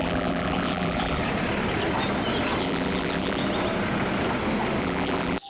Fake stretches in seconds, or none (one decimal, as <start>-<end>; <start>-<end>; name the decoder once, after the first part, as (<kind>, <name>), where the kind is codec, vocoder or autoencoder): 0.0-1.2 (vocoder, BigVGAN v2); 2.6-3.4; 4.8-5.5